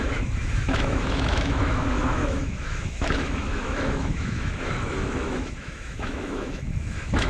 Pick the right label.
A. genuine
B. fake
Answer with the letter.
B